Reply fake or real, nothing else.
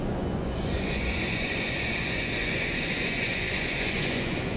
fake